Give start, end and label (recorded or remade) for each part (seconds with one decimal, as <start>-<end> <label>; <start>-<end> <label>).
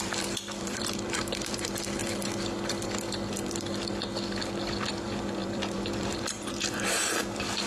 0.0-2.0 remade; 2.0-4.4 recorded; 4.4-7.7 remade